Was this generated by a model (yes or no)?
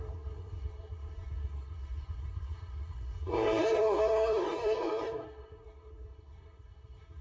yes